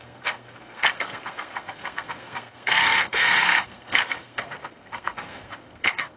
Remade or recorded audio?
remade